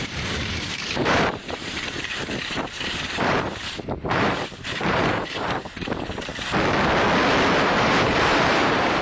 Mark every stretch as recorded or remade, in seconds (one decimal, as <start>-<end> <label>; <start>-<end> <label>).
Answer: 0.0-6.3 remade; 6.3-7.6 recorded; 7.6-9.0 remade